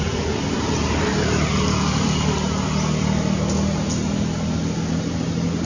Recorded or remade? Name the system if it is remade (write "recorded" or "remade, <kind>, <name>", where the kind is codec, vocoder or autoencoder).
recorded